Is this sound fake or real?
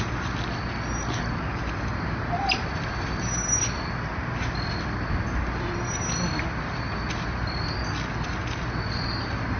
real